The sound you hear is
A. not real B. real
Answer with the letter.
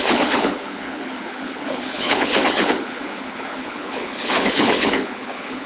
A